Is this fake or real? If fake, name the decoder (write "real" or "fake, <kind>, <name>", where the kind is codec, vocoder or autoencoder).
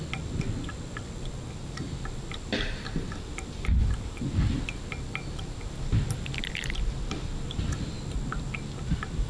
real